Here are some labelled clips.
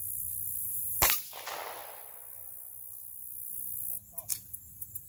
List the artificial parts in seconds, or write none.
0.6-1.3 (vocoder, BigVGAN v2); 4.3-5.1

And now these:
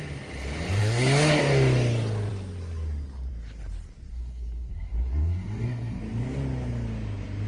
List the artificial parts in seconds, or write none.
0.8-1.4 (codec, SNAC); 4.1-6.0

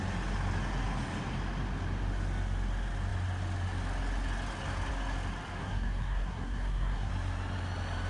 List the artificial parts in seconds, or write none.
5.6-7.1 (codec, SNAC)

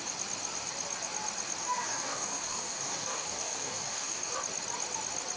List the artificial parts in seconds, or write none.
1.6-4.3 (codec, DAC)